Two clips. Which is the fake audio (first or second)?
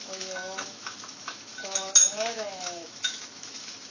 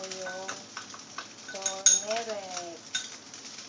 first